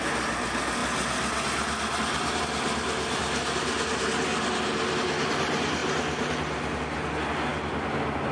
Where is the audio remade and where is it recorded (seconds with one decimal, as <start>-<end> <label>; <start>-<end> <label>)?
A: 0.0-8.3 recorded